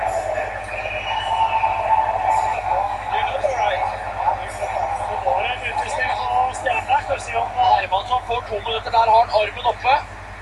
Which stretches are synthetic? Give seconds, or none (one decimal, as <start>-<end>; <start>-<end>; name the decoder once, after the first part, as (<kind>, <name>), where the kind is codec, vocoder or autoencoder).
2.5-3.1 (codec, DAC); 6.6-8.4